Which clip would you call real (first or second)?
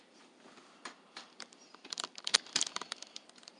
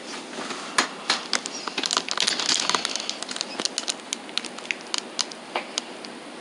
second